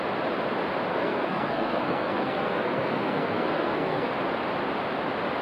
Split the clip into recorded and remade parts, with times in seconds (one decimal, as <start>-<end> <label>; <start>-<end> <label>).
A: 0.0-0.9 recorded; 0.9-4.1 remade; 4.1-5.4 recorded